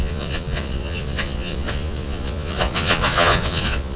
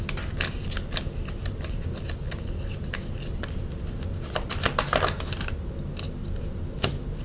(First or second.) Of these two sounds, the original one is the second